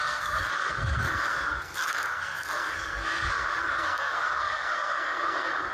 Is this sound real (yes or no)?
no